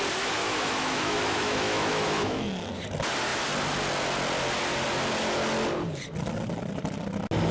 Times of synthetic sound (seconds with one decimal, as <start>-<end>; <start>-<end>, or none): 0.4-2.7